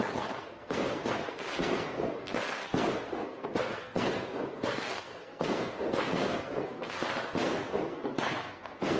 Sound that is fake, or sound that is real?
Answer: fake